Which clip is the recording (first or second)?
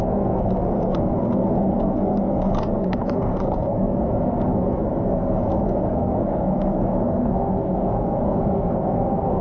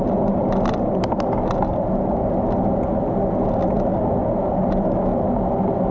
second